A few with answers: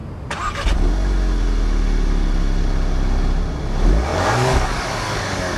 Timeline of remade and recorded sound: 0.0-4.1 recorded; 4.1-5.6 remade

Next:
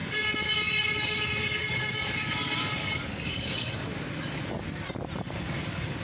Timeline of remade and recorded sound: 0.0-3.9 remade; 3.9-5.2 recorded; 5.2-6.0 remade

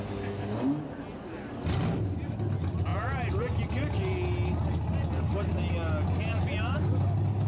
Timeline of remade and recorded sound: 0.0-7.5 recorded